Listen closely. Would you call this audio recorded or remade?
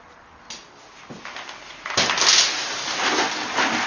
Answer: recorded